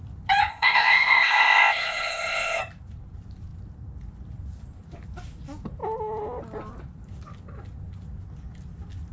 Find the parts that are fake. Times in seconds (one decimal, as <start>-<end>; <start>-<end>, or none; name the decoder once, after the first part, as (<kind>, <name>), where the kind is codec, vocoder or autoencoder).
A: 0.5-2.6 (codec, ZipCodec)